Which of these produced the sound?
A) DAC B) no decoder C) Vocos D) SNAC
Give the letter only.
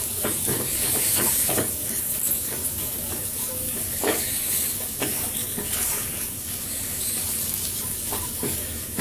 A